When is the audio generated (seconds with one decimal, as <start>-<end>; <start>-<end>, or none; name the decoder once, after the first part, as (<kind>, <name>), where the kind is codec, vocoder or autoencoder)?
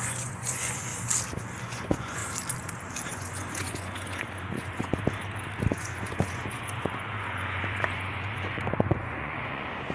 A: 0.0-0.9 (vocoder, Vocos); 1.6-2.2; 3.1-5.0; 5.7-9.9